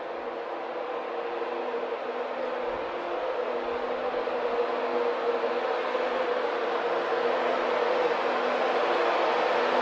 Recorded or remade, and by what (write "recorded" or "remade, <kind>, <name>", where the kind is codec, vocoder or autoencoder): recorded